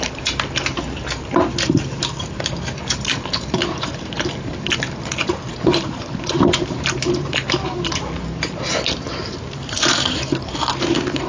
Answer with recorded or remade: remade